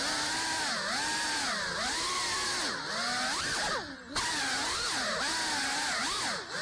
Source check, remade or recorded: recorded